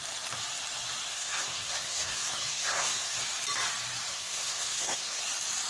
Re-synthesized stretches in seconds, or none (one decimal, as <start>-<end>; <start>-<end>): 1.1-3.2; 4.1-5.2